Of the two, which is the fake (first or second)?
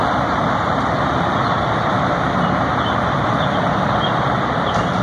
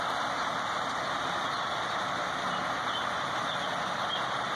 first